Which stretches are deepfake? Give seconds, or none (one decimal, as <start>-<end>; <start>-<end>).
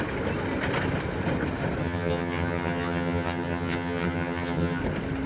1.8-4.8